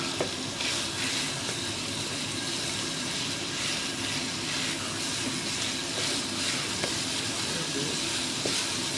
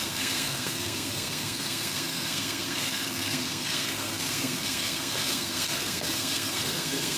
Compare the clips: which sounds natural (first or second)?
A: first